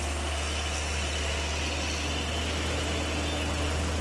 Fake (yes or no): no